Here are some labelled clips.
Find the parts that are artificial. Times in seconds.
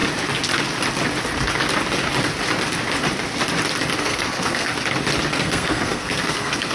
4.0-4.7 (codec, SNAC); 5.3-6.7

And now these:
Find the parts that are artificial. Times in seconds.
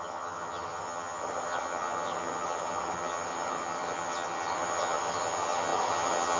0.0-6.4 (vocoder, HiFi-GAN)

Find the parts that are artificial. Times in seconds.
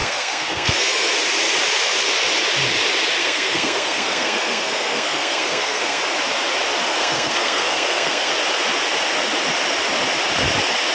0.0-1.1 (codec, SNAC); 3.2-6.0; 6.9-8.3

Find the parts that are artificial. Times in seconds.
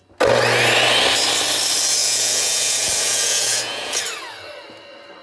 2.0-4.0 (vocoder, Vocos)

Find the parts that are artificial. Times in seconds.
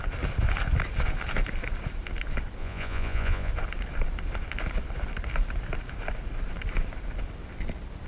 2.6-3.5 (vocoder, Vocos)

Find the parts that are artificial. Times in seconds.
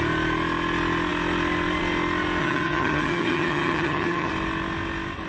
2.4-4.3 (vocoder, HiFi-GAN)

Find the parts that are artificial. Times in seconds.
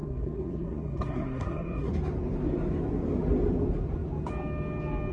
0.0-1.9 (codec, SNAC)